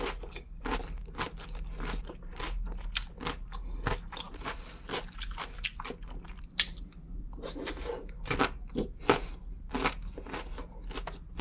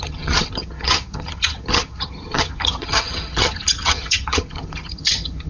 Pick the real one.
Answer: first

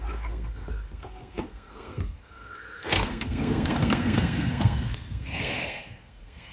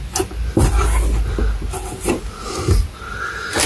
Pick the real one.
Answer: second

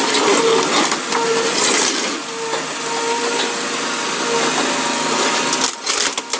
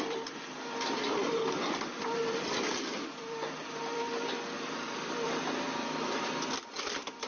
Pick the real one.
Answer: first